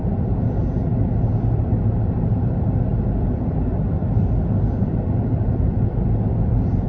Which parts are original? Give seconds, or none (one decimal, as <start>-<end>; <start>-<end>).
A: 0.0-6.9

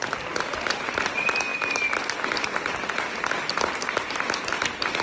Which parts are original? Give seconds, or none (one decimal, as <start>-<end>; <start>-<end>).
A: 0.0-5.0

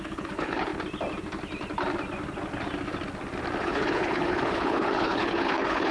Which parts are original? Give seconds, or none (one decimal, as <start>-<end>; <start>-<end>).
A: 0.7-3.6

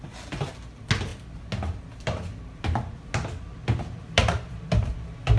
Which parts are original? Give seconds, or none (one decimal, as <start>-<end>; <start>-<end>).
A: 0.0-5.4

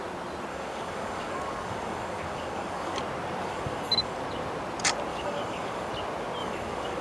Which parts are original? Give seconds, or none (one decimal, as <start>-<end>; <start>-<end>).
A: 0.0-0.5; 3.0-3.4; 4.2-5.1; 5.9-6.4

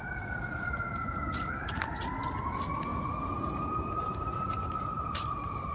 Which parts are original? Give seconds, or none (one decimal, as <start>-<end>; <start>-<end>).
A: 0.0-5.7

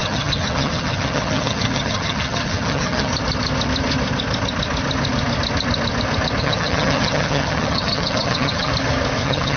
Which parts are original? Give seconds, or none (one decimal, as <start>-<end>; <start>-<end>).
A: 3.1-6.4; 8.7-9.2